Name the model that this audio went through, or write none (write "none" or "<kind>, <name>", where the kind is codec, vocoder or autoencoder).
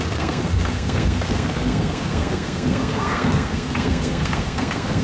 codec, SNAC